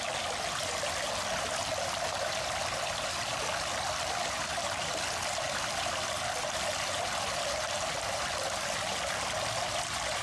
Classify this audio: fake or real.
real